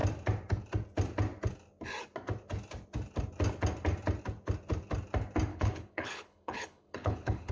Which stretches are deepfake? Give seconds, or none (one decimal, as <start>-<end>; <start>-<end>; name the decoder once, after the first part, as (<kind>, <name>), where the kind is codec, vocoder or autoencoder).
5.5-7.5 (codec, HILCodec)